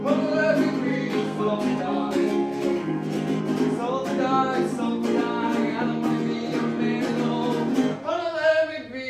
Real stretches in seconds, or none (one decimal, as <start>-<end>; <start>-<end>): 0.0-0.9; 3.4-9.1